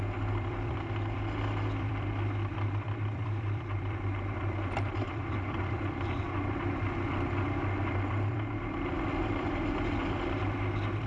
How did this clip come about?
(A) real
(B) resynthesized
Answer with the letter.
B